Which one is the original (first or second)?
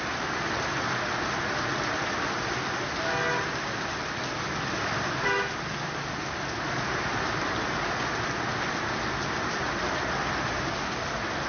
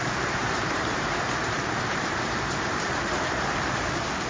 first